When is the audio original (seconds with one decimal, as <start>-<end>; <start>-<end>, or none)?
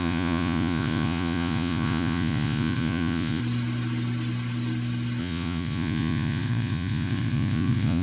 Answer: 3.4-5.2